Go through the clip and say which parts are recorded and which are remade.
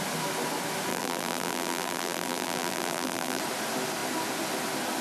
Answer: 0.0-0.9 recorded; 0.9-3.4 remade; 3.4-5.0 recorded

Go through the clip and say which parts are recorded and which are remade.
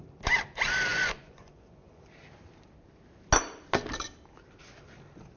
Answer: 0.0-0.9 recorded; 0.9-2.0 remade; 2.0-5.4 recorded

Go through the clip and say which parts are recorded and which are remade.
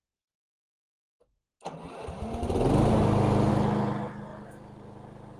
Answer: 0.0-5.4 recorded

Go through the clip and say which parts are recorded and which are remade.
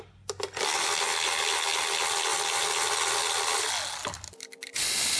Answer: 0.0-5.2 recorded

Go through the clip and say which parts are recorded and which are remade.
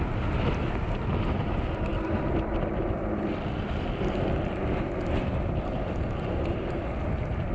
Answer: 0.0-7.5 recorded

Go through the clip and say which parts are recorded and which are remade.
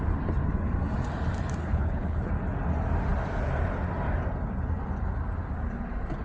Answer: 0.0-1.6 recorded; 1.6-2.3 remade; 2.3-6.2 recorded